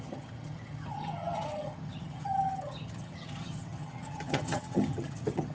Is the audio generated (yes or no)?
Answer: yes